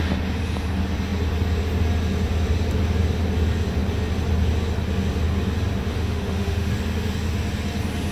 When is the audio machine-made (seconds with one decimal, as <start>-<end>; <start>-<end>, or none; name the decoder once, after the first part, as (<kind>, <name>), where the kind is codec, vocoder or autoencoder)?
5.9-6.7 (autoencoder, DAC-VAE)